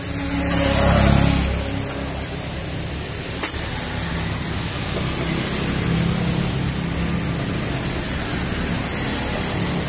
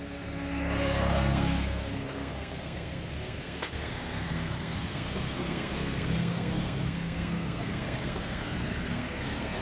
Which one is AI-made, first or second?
second